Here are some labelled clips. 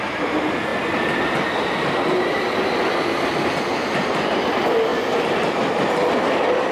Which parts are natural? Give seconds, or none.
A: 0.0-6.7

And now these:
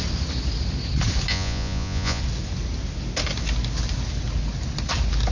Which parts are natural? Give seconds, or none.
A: 0.0-1.3; 2.2-5.3

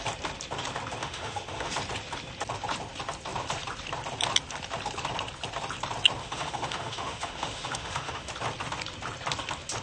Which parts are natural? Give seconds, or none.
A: 0.0-1.0; 1.7-6.2; 8.3-9.8

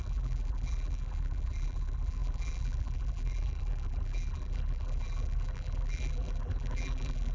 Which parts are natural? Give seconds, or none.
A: none